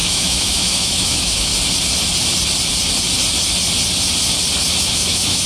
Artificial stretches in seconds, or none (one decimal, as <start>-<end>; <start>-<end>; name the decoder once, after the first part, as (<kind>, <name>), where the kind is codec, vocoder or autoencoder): 0.0-1.5 (autoencoder, DAC-VAE); 4.8-5.5